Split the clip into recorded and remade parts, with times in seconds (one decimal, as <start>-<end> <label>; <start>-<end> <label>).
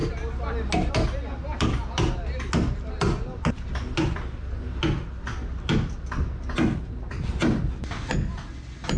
0.0-9.0 recorded